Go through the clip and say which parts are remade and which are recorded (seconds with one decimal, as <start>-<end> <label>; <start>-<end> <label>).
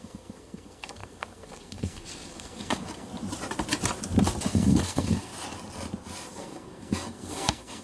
0.0-3.1 remade; 3.1-4.5 recorded; 4.5-5.3 remade; 5.3-6.3 recorded; 6.3-7.8 remade